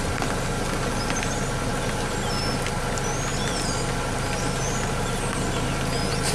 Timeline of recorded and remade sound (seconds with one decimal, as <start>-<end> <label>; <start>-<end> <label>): 0.0-3.3 recorded; 3.3-3.8 remade; 3.8-6.3 recorded